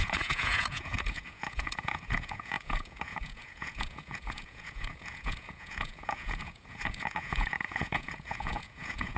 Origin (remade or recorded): remade